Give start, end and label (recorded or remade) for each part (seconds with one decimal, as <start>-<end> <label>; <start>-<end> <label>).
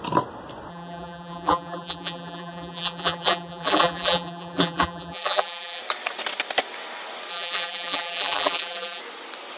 0.0-0.7 recorded; 0.7-5.8 remade; 5.8-7.3 recorded; 7.3-9.0 remade; 9.0-9.6 recorded